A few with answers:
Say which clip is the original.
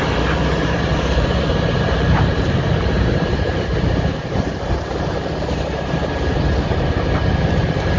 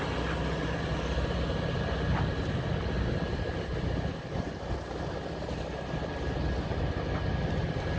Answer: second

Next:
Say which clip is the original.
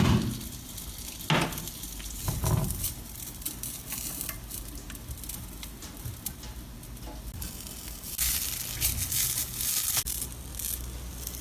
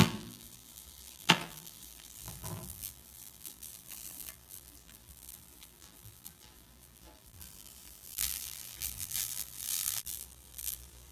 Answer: first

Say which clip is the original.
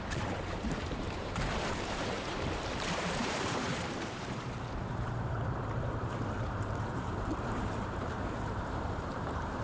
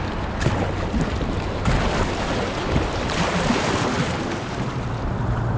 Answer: second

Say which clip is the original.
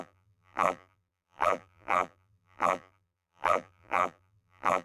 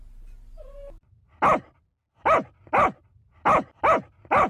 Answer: second